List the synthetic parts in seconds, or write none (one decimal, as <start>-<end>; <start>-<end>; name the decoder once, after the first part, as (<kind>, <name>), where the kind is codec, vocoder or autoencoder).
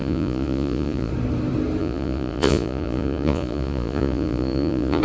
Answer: 0.0-1.1 (vocoder, Vocos); 1.8-5.0